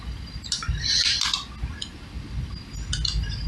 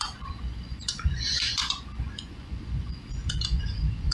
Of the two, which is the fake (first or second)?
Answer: second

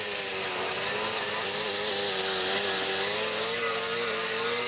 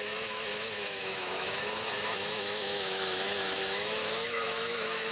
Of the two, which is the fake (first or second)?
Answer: second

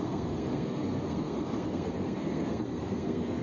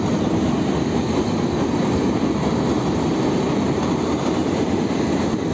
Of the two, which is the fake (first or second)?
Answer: first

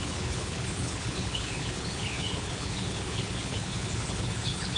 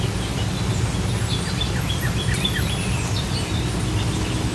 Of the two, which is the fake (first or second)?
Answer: first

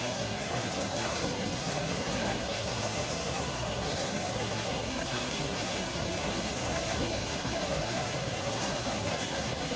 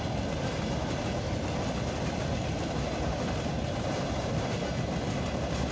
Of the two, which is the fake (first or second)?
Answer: first